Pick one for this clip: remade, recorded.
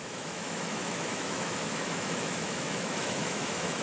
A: remade